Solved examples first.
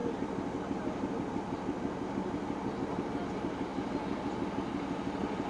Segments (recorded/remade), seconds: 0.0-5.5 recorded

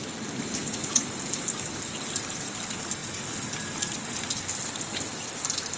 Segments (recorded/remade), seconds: 0.0-5.8 recorded

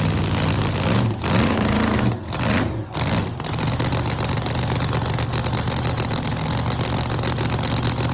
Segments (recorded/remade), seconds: 0.0-8.1 recorded

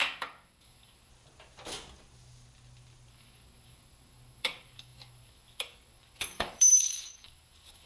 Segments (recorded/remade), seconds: 0.0-1.1 remade; 1.1-3.1 recorded; 3.1-7.9 remade

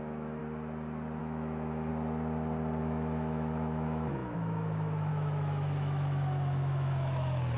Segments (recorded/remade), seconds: 0.0-0.4 remade; 0.4-1.2 recorded; 1.2-1.9 remade; 1.9-2.8 recorded; 2.8-7.6 remade

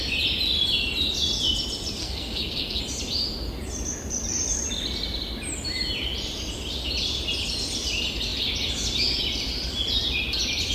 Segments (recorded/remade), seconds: 0.0-2.0 recorded; 2.0-2.8 remade; 2.8-10.7 recorded

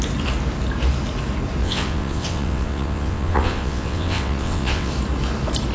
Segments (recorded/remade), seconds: 0.0-1.6 recorded; 1.6-4.9 remade; 4.9-5.7 recorded

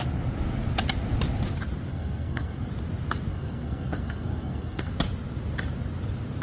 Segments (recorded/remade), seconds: 0.0-1.9 recorded; 1.9-2.7 remade; 2.7-3.3 recorded; 3.3-4.9 remade; 4.9-6.4 recorded